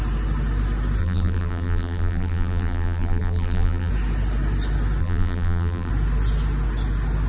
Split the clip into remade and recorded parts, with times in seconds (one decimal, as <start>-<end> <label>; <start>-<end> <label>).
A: 0.0-1.0 recorded; 1.0-3.9 remade; 3.9-5.0 recorded; 5.0-5.9 remade; 5.9-7.3 recorded